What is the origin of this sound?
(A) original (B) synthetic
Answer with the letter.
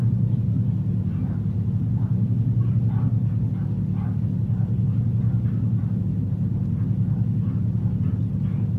A